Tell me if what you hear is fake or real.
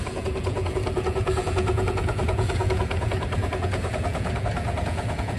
fake